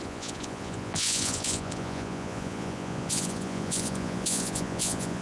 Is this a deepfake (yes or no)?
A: yes